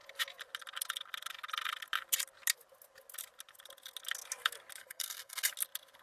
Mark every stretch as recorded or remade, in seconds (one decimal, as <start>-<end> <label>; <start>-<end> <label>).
0.0-4.8 recorded; 4.8-5.5 remade; 5.5-6.0 recorded